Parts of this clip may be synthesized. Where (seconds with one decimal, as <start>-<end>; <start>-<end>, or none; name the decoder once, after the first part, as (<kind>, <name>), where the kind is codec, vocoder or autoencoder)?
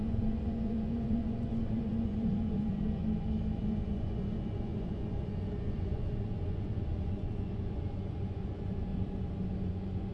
0.0-3.0 (vocoder, Vocos); 3.6-8.9; 9.7-10.1